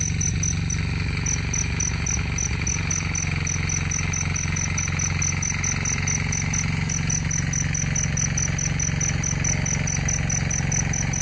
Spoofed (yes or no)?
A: no